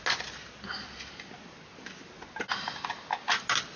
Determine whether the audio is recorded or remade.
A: recorded